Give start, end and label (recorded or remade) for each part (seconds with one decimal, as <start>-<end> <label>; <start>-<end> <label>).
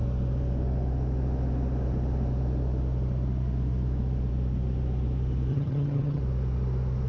0.0-5.5 recorded; 5.5-6.2 remade; 6.2-7.1 recorded